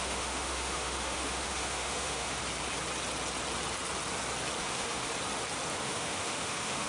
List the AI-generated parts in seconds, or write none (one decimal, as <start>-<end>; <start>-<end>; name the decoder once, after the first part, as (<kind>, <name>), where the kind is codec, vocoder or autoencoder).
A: 0.0-2.4 (autoencoder, DAC-VAE); 4.6-5.1; 5.7-6.9